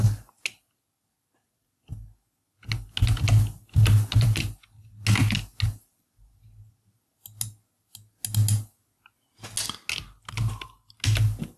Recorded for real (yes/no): yes